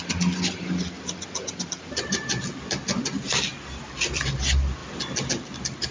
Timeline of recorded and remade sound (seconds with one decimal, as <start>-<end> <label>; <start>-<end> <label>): 0.0-5.9 recorded